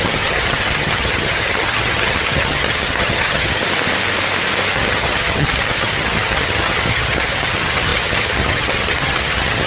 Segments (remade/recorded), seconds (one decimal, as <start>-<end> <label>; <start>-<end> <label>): 0.0-3.6 remade; 3.6-4.7 recorded; 4.7-9.7 remade